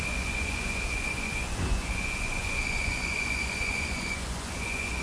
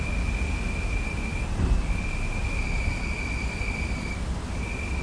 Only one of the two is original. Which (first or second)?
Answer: second